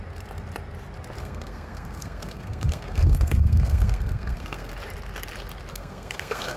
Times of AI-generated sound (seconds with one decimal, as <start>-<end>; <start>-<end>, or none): 1.2-4.7; 5.7-6.6